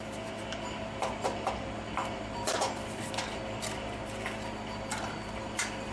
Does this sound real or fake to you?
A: real